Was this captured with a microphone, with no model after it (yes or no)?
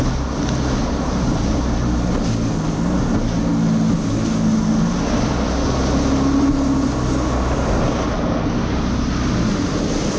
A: yes